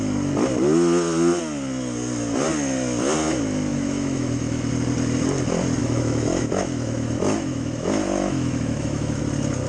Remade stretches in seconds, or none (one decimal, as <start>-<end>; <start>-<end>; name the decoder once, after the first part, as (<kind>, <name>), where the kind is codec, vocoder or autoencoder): 3.7-4.7 (autoencoder, DAC-VAE); 5.8-9.2

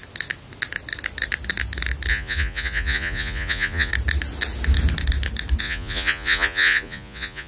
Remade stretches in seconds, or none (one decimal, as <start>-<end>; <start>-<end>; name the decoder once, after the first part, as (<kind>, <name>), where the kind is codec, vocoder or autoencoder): 2.1-3.9 (vocoder, Vocos); 5.6-7.5

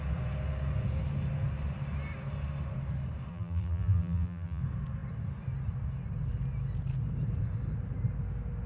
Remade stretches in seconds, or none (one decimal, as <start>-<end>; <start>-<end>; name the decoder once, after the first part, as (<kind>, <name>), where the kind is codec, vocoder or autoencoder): 3.3-4.6 (vocoder, BigVGAN v2)

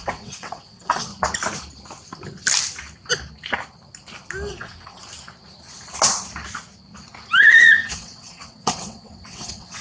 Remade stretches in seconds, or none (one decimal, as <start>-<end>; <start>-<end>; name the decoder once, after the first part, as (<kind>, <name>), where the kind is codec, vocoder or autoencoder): 0.0-1.1 (vocoder, WaveNeXt); 4.5-5.0; 7.4-9.8